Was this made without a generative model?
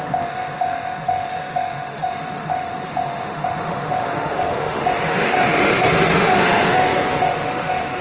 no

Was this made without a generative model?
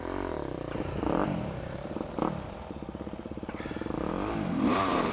no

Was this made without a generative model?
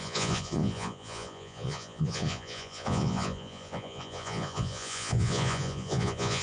no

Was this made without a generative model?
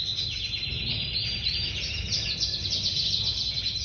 yes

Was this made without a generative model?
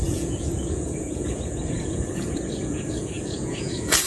no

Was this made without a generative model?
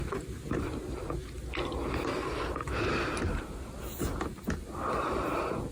yes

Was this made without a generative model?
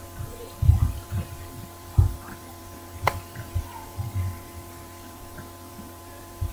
no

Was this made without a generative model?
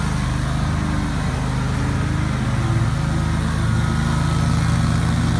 yes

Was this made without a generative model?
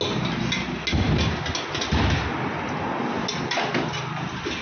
yes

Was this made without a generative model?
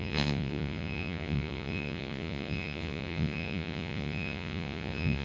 no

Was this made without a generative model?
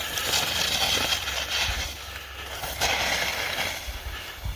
yes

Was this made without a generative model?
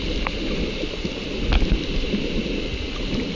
yes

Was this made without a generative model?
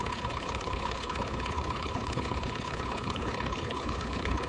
no